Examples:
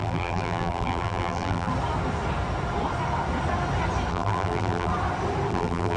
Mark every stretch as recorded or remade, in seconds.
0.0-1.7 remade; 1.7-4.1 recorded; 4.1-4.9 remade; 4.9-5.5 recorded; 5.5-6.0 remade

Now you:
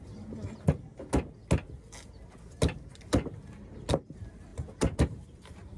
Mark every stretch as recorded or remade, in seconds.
0.0-4.5 recorded; 4.5-5.8 remade

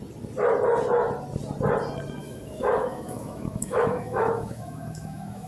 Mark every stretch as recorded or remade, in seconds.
0.0-2.2 recorded; 2.2-5.5 remade

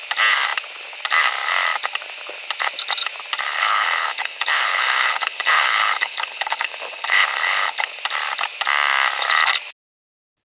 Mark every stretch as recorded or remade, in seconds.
0.0-3.5 recorded; 3.5-7.9 remade; 7.9-10.5 recorded